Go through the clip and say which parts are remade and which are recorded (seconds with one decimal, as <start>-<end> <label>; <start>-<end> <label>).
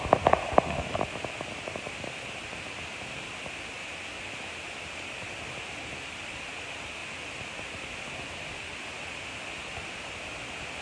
0.0-10.8 recorded